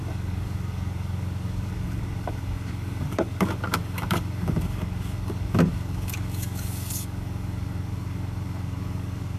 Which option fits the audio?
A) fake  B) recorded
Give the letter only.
A